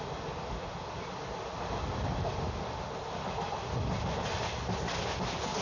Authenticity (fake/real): real